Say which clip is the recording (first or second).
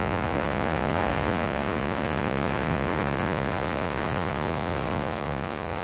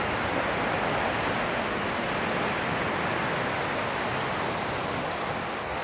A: second